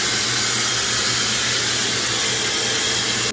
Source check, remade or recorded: recorded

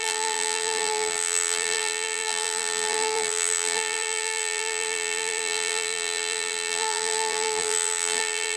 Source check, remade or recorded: remade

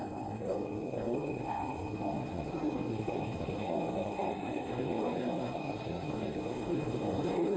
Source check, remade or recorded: remade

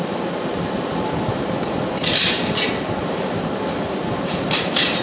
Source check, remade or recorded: remade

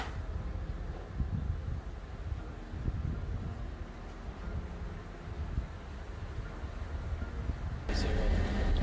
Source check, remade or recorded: recorded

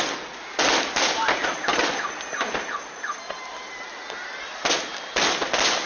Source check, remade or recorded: recorded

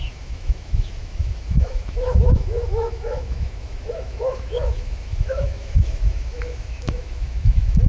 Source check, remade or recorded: remade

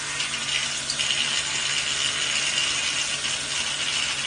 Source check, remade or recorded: recorded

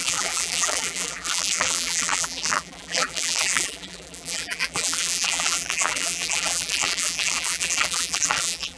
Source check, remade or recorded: remade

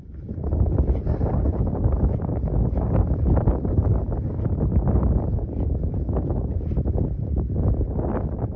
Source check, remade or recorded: recorded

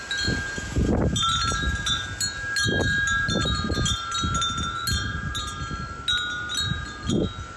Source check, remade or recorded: recorded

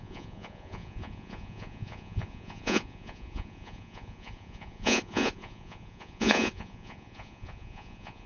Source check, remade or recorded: remade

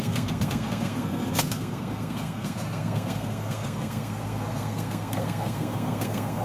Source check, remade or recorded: remade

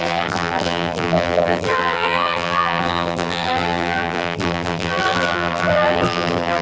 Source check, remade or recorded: remade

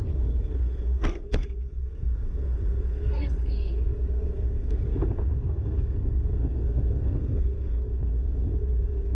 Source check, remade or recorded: remade